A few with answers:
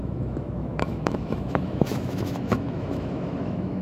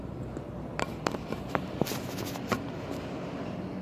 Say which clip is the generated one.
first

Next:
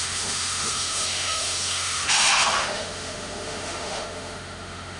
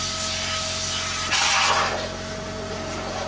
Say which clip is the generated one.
first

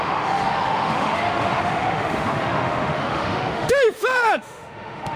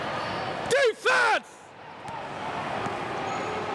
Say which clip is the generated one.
first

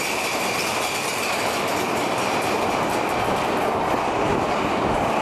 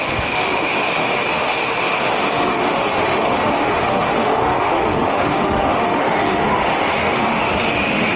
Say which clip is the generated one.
second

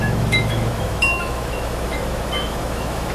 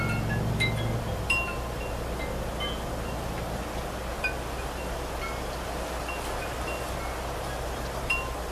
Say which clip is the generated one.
first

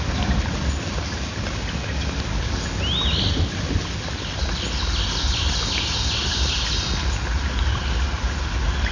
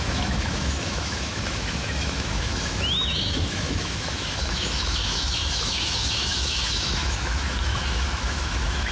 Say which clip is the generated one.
second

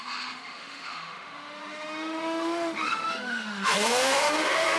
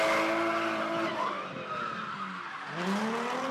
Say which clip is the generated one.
first